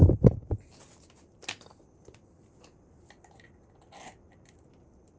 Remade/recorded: recorded